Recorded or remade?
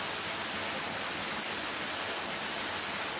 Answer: recorded